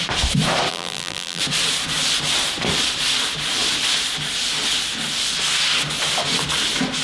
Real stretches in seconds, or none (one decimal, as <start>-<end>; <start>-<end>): 0.0-0.7; 1.4-7.0